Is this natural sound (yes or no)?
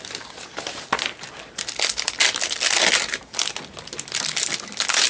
yes